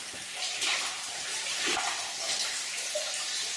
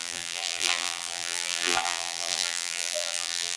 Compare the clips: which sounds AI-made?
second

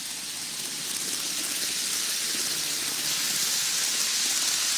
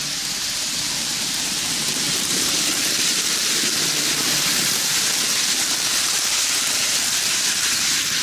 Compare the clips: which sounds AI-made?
second